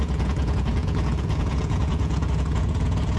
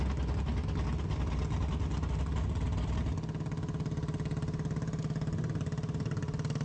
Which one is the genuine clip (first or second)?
second